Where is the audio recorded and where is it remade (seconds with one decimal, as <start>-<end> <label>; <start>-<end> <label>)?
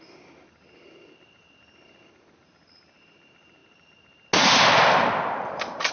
0.0-5.9 recorded